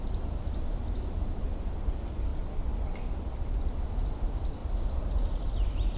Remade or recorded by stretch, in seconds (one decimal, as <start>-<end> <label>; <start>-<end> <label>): 0.0-6.0 recorded